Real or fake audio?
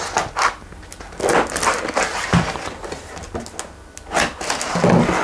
real